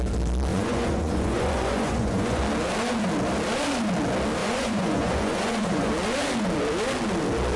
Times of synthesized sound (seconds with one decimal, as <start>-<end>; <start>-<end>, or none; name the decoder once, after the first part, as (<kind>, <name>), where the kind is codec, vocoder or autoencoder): 0.5-2.4 (vocoder, Vocos); 4.4-5.9